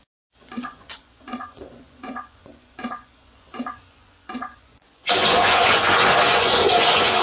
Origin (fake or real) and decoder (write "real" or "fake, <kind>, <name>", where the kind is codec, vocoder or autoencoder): fake, vocoder, Vocos